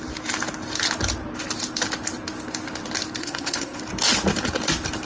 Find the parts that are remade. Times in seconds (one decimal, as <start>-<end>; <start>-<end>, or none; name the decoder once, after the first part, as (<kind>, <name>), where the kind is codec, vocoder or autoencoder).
3.2-3.8 (codec, SNAC)